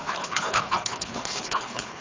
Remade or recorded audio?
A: remade